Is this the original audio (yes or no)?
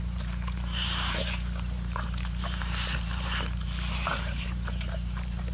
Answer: no